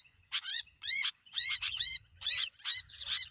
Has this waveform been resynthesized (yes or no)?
yes